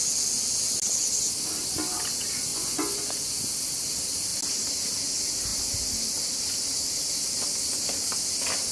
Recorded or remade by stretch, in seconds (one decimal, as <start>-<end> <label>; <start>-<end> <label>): 0.0-2.5 recorded; 2.5-3.5 remade; 3.5-8.7 recorded